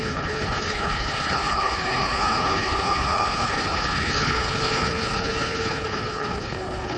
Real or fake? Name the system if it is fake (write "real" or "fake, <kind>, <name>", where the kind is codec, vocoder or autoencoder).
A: fake, codec, HILCodec